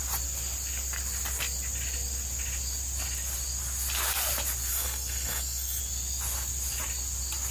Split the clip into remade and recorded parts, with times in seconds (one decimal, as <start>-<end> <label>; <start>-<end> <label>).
0.0-4.7 recorded; 4.7-5.8 remade; 5.8-7.5 recorded